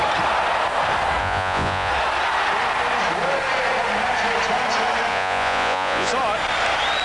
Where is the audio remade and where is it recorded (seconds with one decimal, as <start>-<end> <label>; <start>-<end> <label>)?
0.0-1.2 recorded; 1.2-1.9 remade; 1.9-5.1 recorded; 5.1-6.1 remade; 6.1-7.0 recorded